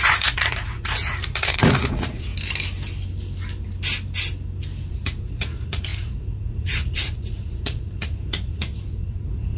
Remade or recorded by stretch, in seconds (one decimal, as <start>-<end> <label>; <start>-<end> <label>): 0.0-2.3 remade; 2.3-4.9 recorded; 4.9-9.6 remade